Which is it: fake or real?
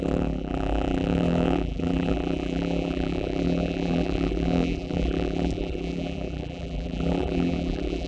fake